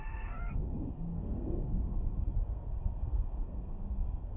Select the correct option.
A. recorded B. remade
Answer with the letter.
B